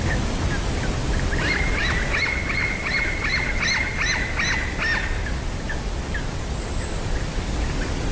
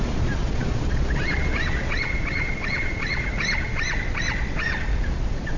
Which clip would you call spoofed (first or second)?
second